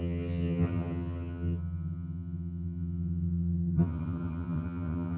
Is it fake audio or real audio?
fake